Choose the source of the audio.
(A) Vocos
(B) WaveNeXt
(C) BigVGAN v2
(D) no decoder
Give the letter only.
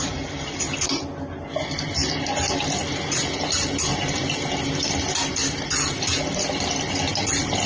D